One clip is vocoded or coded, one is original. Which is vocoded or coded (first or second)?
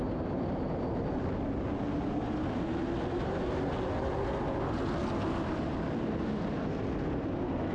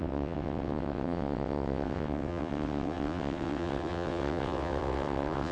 second